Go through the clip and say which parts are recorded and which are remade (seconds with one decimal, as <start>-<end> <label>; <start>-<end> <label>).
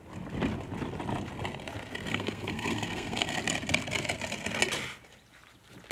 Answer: 0.0-2.1 recorded; 2.1-3.4 remade; 3.4-5.9 recorded